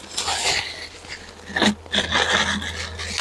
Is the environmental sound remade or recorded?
recorded